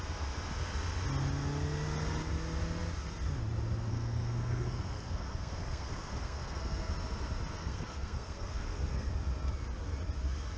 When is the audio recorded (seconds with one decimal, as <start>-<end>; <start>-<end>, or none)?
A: 0.0-3.9; 6.9-7.6; 9.1-10.6